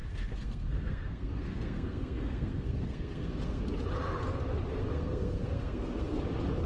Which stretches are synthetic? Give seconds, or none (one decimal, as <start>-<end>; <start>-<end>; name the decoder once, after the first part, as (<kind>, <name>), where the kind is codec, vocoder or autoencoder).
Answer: 0.0-3.6 (codec, SNAC); 4.9-6.2